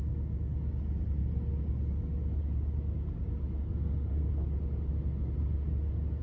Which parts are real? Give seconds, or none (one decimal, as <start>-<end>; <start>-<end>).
0.0-3.6; 4.3-6.2